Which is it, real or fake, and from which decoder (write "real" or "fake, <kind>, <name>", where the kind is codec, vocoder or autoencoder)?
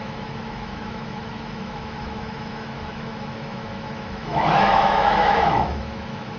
fake, autoencoder, DAC-VAE